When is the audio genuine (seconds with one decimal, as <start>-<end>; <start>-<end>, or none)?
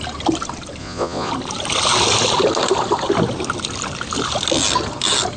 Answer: 0.0-0.8; 1.3-5.4